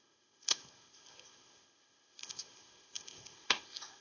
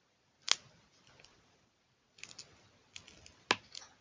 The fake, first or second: first